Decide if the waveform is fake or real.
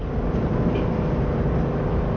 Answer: real